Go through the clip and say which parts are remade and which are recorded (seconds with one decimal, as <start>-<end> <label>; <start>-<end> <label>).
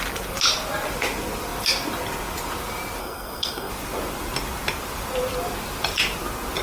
0.0-3.0 recorded; 3.0-3.7 remade; 3.7-6.6 recorded